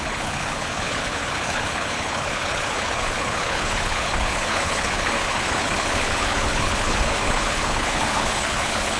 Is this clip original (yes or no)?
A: no